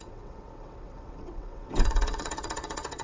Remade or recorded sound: remade